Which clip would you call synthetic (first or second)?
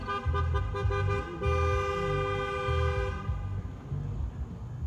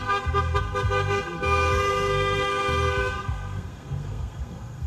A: second